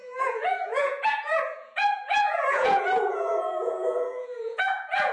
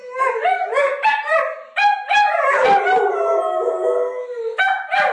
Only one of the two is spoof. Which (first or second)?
first